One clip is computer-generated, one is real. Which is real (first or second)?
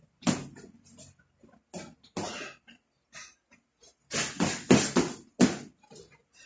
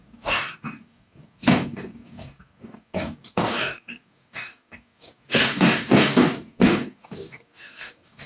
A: first